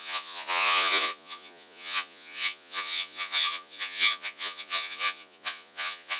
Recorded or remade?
remade